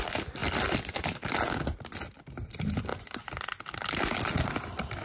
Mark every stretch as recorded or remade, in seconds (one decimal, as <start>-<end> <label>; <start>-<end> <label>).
0.0-5.0 recorded